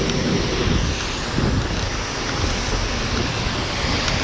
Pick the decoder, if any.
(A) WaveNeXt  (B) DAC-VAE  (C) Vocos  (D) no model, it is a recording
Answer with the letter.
D